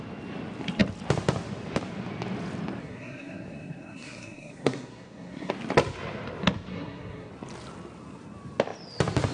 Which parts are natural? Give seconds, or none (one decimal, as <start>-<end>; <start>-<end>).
0.0-2.8; 5.5-6.7; 7.3-9.3